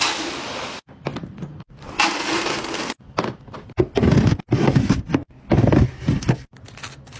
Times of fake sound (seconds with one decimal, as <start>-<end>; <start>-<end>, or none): none